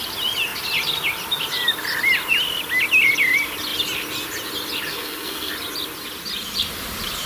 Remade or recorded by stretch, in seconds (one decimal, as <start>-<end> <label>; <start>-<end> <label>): 0.0-4.9 recorded; 4.9-5.5 remade; 5.5-7.3 recorded